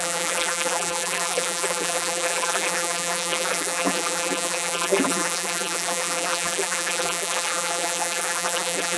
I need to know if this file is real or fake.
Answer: fake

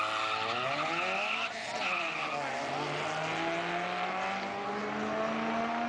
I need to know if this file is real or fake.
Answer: real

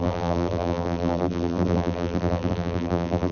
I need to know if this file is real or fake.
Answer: fake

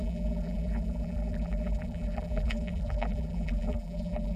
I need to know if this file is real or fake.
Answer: fake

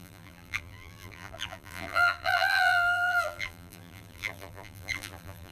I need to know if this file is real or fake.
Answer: fake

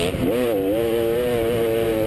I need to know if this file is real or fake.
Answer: fake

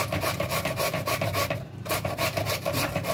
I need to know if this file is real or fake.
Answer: fake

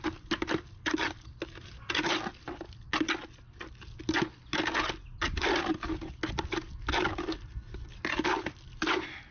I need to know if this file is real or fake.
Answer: real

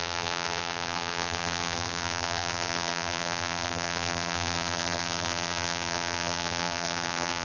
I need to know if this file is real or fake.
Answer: fake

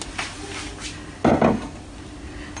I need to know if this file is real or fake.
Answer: real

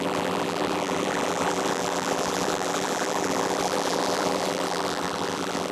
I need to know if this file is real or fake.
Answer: fake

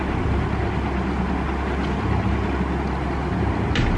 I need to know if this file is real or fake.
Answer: fake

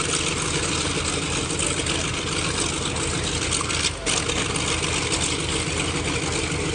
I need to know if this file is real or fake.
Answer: real